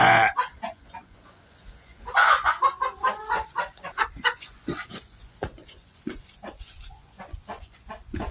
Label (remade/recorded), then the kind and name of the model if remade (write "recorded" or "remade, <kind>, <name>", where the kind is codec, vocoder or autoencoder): remade, vocoder, Vocos